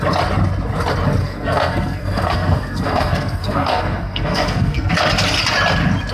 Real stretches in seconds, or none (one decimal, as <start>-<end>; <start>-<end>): 0.0-1.2; 4.9-6.1